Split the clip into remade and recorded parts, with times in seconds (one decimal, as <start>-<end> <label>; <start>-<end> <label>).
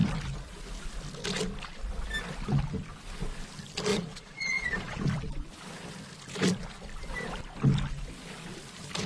0.0-3.9 recorded; 3.9-5.0 remade; 5.0-9.1 recorded